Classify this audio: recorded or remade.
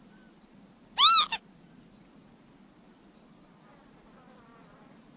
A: recorded